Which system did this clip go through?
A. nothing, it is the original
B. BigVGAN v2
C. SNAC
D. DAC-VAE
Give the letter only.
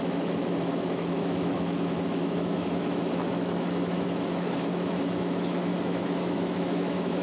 D